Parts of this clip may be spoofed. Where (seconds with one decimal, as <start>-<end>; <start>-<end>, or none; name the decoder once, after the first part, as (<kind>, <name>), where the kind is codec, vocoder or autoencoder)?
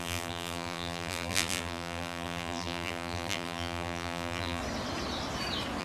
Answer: 0.0-4.6 (vocoder, BigVGAN v2)